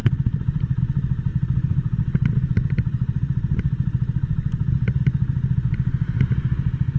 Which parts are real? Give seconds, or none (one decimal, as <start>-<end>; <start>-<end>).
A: 0.8-7.0